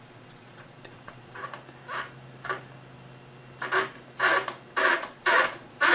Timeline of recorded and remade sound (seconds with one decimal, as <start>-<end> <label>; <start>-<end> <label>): 0.0-1.4 remade; 1.4-4.9 recorded; 4.9-5.9 remade